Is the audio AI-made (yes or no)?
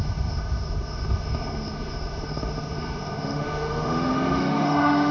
yes